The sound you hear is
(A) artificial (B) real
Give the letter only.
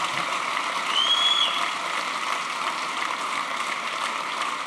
B